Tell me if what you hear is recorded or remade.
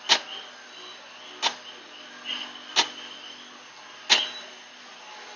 recorded